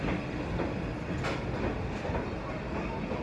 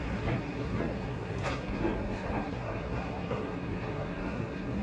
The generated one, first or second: second